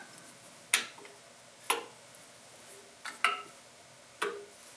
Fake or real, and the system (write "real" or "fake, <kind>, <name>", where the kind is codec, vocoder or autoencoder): real